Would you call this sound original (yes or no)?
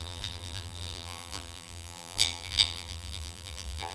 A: no